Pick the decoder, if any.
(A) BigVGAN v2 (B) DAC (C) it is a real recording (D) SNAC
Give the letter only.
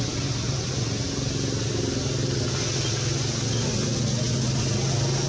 C